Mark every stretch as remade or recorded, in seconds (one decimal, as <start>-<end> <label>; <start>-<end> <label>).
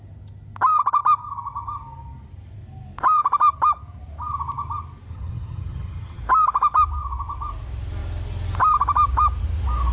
0.0-5.1 recorded; 5.1-6.2 remade; 6.2-9.9 recorded